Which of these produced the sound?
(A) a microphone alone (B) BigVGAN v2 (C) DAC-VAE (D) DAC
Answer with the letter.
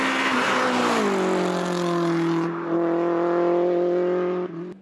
A